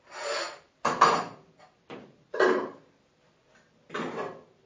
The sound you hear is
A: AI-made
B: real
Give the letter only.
B